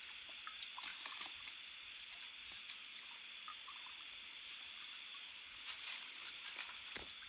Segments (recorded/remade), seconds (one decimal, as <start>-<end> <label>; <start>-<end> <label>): 0.0-0.9 recorded; 0.9-2.1 remade; 2.1-3.5 recorded; 3.5-6.5 remade; 6.5-7.3 recorded